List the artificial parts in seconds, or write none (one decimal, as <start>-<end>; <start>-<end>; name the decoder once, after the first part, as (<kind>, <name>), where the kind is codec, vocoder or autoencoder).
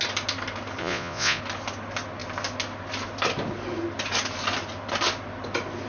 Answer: 0.8-1.4 (vocoder, Vocos)